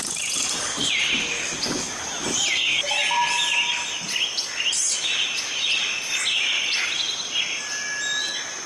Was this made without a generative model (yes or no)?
yes